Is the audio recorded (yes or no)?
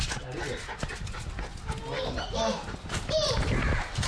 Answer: yes